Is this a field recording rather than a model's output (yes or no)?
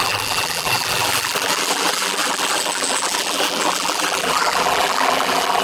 no